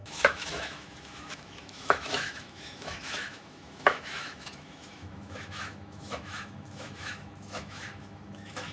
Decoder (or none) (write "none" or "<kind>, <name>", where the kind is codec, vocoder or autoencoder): autoencoder, DAC-VAE